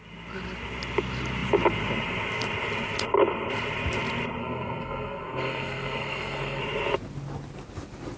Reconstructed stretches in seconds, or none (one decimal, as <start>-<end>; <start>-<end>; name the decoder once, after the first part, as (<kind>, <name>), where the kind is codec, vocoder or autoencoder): 4.4-6.6 (codec, SNAC)